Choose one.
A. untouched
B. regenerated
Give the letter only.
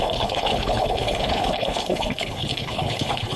B